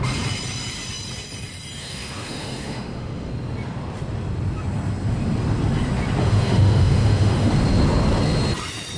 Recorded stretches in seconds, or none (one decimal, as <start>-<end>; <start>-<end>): 0.0-1.8; 3.3-6.2; 7.5-9.0